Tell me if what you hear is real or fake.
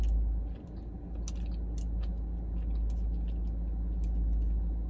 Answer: real